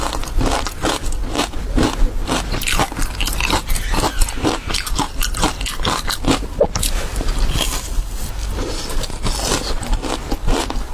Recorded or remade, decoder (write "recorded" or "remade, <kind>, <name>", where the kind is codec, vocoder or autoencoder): recorded